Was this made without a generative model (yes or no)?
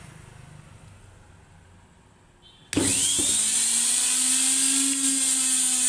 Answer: yes